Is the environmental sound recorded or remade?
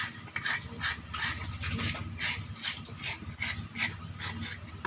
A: recorded